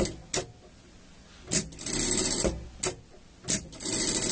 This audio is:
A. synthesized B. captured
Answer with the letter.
B